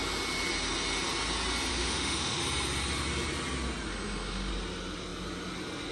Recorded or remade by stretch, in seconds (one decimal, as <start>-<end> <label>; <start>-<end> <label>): 0.0-1.7 recorded; 1.7-2.4 remade; 2.4-3.9 recorded; 3.9-4.5 remade; 4.5-5.9 recorded